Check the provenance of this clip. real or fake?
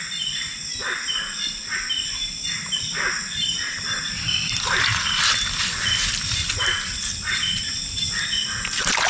real